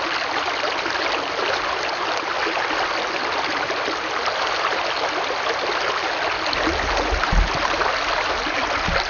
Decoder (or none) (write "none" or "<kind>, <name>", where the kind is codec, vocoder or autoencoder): none